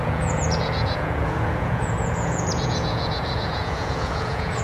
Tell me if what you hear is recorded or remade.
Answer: remade